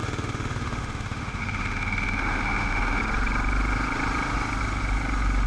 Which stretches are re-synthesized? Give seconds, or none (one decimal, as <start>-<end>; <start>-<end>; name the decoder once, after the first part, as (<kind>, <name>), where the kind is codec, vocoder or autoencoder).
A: 0.0-3.0 (autoencoder, DAC-VAE)